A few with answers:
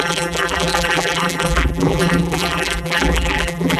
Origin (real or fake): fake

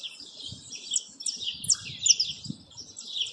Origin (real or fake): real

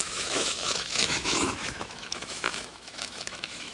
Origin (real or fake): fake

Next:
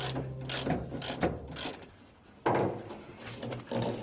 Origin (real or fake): real